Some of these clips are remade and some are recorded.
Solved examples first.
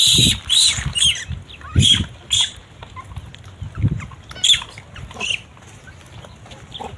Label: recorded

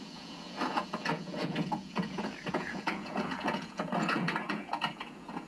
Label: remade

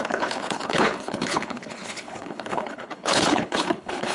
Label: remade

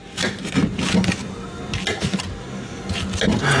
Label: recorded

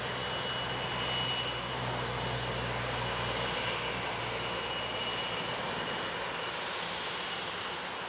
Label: recorded